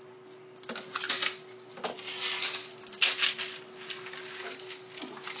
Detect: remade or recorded recorded